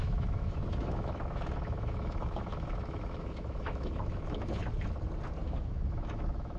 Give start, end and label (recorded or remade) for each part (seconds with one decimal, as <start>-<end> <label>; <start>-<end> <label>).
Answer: 0.0-4.6 remade; 4.6-5.4 recorded; 5.4-6.6 remade